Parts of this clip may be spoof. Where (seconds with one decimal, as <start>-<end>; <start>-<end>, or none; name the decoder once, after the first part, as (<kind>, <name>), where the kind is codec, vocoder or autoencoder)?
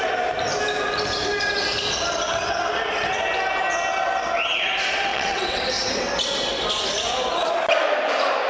5.1-5.6 (vocoder, WaveNeXt)